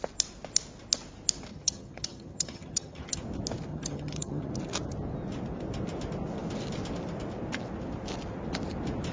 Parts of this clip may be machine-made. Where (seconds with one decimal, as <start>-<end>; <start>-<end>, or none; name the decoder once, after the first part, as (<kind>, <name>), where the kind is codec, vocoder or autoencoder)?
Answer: 1.5-3.2 (vocoder, HiFi-GAN); 3.7-4.5